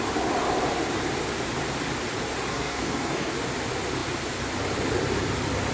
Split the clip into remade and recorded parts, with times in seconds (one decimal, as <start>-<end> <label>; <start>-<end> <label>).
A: 0.0-2.5 recorded; 2.5-3.3 remade; 3.3-5.7 recorded